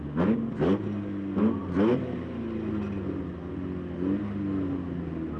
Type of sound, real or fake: real